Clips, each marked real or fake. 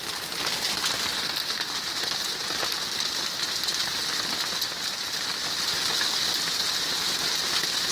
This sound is real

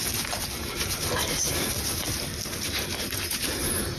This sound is real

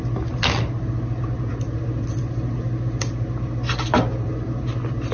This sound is real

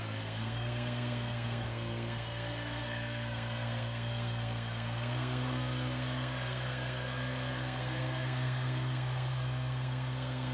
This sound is fake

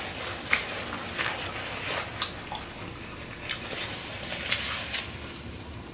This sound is real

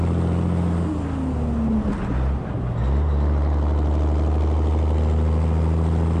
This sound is real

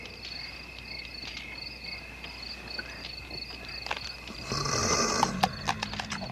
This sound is real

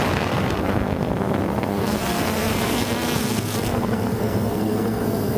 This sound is fake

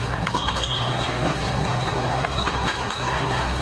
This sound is fake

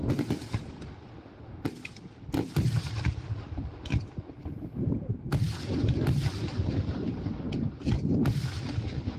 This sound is real